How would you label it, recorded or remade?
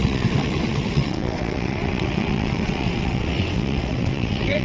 remade